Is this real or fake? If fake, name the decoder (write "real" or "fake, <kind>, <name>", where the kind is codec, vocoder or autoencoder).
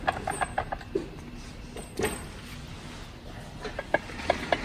real